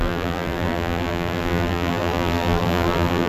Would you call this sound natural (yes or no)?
no